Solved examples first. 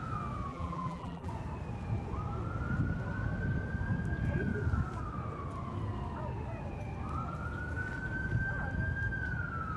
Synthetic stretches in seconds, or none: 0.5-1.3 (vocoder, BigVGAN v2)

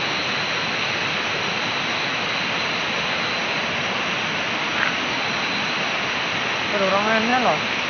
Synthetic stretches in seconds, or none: none

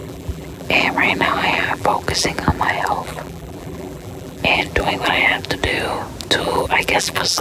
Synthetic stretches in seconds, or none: 0.0-5.7 (vocoder, BigVGAN v2); 6.4-7.4

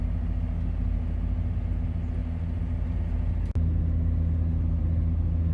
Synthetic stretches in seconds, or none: none